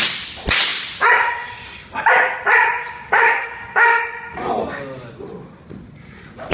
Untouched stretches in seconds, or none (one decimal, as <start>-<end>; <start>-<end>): 0.0-2.8; 4.0-6.5